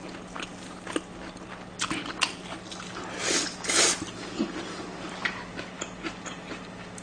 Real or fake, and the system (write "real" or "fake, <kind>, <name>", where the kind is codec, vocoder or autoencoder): real